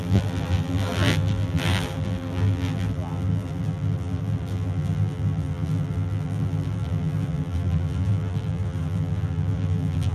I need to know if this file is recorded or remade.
remade